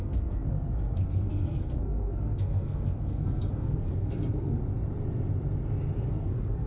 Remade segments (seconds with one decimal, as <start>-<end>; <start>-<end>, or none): 0.0-4.6; 6.1-6.7